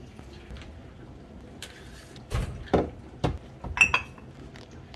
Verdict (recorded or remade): recorded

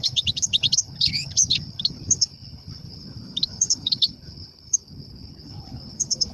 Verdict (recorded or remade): remade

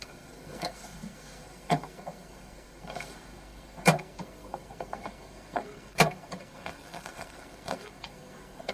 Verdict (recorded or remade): remade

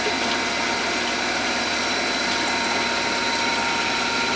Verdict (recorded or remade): recorded